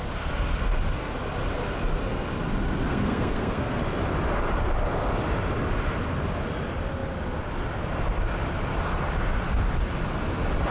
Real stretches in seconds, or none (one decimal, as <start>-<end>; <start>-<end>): 0.0-2.9; 3.8-10.7